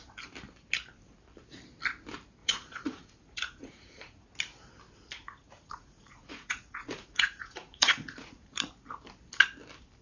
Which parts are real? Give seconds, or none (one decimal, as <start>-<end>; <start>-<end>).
0.0-2.4; 4.3-5.4; 8.7-10.0